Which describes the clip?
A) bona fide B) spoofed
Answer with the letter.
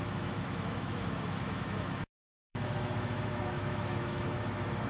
B